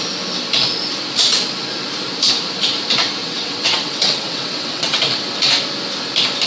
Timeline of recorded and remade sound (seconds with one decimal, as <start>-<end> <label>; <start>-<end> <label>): 0.0-3.2 recorded; 3.2-5.0 remade; 5.0-6.5 recorded